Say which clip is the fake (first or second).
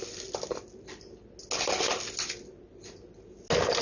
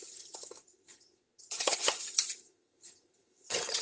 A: second